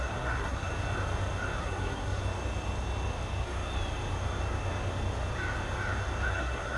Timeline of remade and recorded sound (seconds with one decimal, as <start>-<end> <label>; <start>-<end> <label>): 0.0-0.7 remade; 0.7-1.6 recorded; 1.6-2.2 remade; 2.2-6.3 recorded; 6.3-6.8 remade